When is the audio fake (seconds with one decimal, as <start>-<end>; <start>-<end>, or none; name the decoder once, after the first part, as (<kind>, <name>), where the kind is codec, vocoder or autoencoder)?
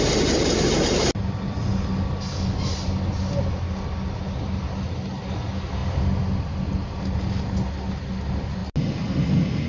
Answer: none